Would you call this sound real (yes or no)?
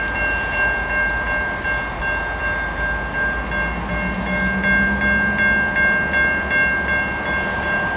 yes